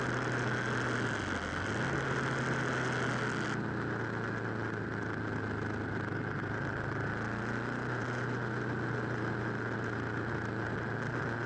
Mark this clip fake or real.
real